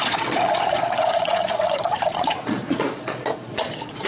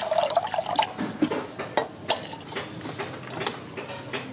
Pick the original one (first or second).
second